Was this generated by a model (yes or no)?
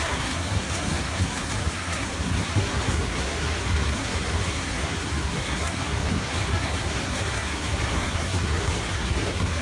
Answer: yes